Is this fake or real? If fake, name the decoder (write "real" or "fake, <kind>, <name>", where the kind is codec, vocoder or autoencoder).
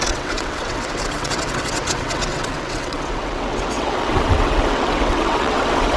fake, vocoder, WaveNeXt